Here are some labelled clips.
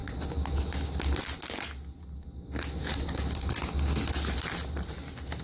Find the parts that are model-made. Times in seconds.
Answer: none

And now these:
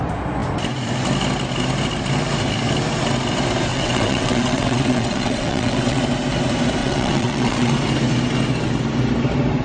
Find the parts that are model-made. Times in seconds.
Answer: 3.7-6.0 (vocoder, WaveNeXt); 6.8-7.7

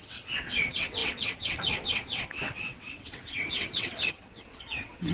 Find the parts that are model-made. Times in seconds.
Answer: 0.0-5.1 (vocoder, WaveNeXt)

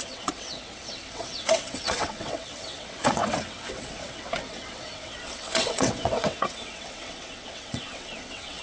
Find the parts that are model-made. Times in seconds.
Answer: 0.0-8.6 (vocoder, WaveNeXt)

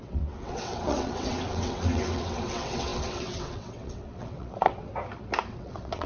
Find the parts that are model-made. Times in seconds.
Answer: 0.0-4.9 (vocoder, WaveNeXt); 5.5-6.1

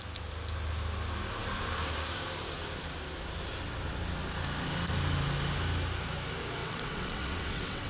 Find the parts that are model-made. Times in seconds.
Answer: 6.6-7.9 (vocoder, WaveNeXt)

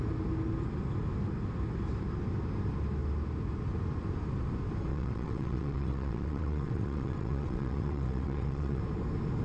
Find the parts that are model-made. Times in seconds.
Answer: 4.9-8.8 (vocoder, WaveNeXt)